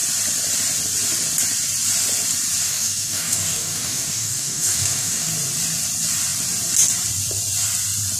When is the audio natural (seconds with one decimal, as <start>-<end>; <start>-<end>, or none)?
0.0-2.6; 5.3-8.2